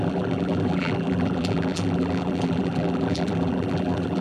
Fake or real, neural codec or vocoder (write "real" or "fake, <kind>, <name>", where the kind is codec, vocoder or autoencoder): fake, vocoder, BigVGAN v2